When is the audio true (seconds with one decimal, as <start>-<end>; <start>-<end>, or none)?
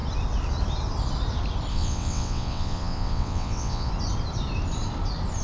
0.0-1.7; 3.9-5.4